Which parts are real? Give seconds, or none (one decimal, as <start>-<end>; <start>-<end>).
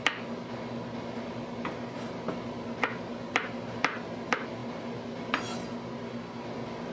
0.0-6.9